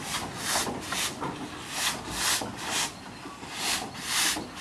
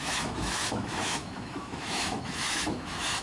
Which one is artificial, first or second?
second